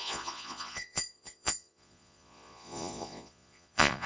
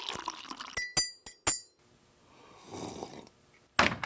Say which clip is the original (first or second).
second